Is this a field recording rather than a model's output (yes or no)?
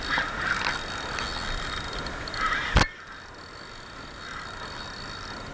yes